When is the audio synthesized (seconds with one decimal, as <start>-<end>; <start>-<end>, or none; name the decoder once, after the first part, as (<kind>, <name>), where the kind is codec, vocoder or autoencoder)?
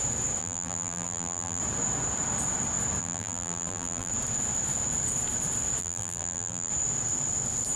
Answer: 0.4-1.6 (vocoder, BigVGAN v2); 3.0-4.1; 5.8-6.7